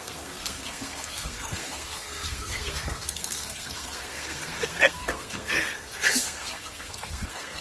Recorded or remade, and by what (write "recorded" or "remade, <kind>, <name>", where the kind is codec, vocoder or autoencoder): remade, codec, SNAC